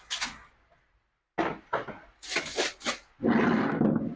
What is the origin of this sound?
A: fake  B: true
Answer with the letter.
B